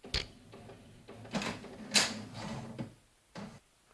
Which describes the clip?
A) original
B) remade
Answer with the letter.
A